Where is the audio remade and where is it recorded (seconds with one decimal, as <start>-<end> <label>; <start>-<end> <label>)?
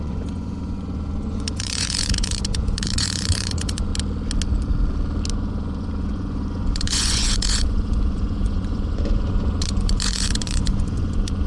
0.0-3.9 remade; 3.9-5.3 recorded; 5.3-11.5 remade